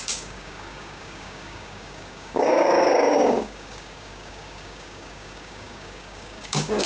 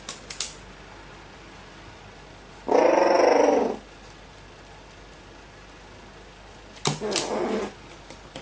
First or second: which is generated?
first